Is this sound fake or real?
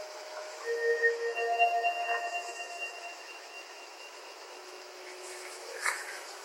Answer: fake